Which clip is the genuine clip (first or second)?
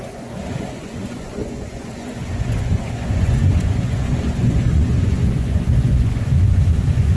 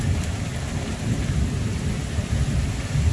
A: second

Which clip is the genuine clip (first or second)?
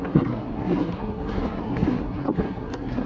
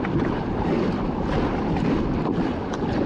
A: second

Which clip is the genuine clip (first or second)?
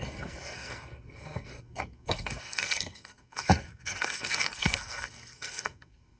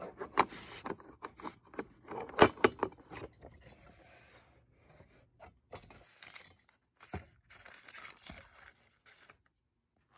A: second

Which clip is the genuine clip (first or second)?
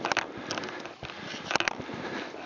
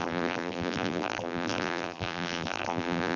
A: first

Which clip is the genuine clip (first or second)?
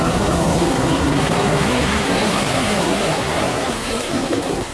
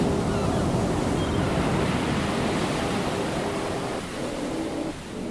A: second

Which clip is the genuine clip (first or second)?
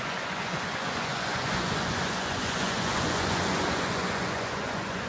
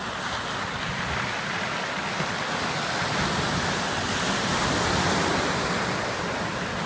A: second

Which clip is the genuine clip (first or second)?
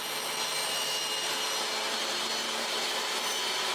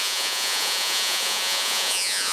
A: first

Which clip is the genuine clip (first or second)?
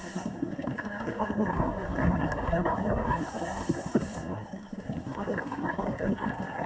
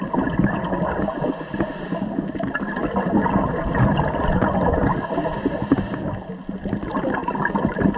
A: second